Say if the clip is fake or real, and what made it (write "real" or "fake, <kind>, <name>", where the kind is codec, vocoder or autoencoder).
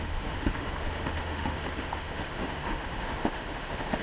fake, autoencoder, DAC-VAE